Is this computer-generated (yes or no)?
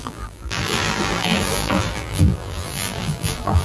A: yes